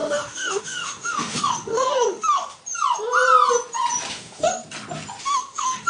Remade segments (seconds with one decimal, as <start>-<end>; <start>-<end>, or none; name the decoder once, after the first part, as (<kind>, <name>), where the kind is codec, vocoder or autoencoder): 0.0-2.6 (autoencoder, DAC-VAE); 4.1-4.5; 5.2-5.9